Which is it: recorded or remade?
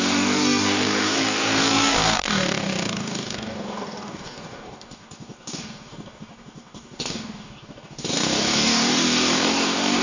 remade